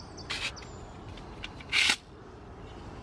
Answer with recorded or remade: recorded